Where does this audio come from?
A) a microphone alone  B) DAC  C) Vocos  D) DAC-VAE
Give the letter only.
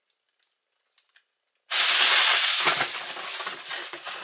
A